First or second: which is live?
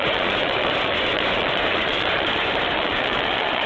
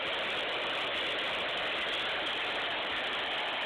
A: second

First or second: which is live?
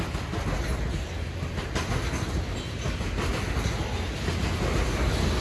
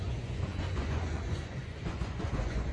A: first